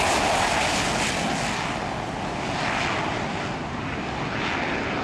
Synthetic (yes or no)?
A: no